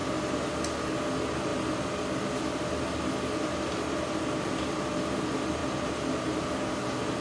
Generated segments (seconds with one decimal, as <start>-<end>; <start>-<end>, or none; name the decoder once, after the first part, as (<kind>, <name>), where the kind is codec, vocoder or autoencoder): none